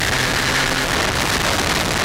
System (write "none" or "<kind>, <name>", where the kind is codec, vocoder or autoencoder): none